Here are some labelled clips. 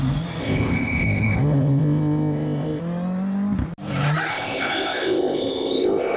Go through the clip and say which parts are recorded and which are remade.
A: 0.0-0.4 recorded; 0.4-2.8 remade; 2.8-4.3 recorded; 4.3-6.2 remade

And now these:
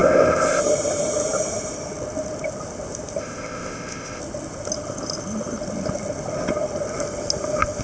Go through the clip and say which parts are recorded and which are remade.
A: 0.0-0.6 remade; 0.6-3.2 recorded; 3.2-4.2 remade; 4.2-7.8 recorded

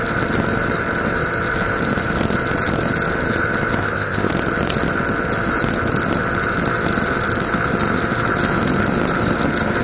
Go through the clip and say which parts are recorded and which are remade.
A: 0.0-3.8 recorded; 3.8-4.3 remade; 4.3-9.8 recorded